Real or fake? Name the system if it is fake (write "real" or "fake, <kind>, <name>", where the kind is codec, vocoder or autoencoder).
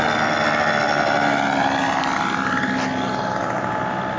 real